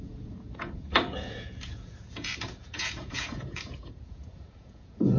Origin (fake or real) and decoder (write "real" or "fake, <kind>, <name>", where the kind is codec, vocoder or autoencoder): fake, vocoder, Vocos